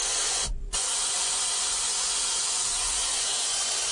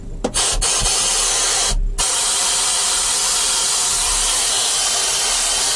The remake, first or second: first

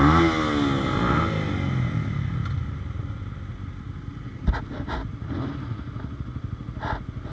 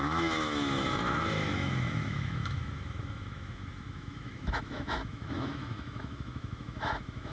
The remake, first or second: second